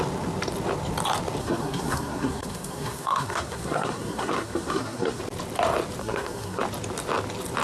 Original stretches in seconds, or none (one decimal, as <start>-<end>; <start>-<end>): 0.0-1.4; 5.2-6.0; 6.6-7.6